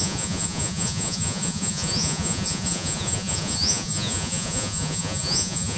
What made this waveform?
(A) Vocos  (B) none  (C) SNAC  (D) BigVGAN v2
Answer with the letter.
A